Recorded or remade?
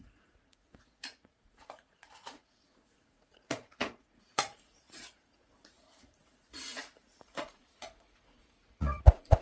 remade